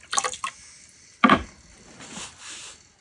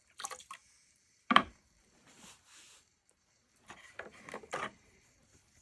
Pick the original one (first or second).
first